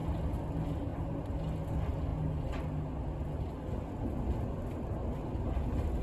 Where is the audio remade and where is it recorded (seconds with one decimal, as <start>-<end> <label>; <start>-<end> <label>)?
0.0-6.0 recorded